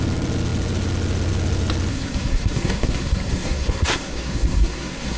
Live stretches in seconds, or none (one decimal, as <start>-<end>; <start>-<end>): 0.0-1.9